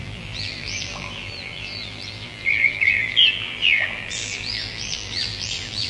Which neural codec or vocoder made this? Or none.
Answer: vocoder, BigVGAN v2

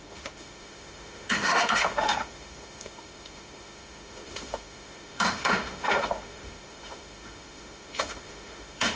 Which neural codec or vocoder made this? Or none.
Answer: autoencoder, DAC-VAE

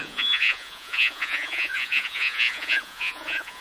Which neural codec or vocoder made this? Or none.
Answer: vocoder, Vocos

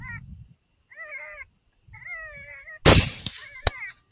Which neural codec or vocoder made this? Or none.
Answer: none